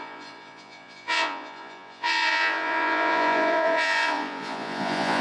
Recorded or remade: remade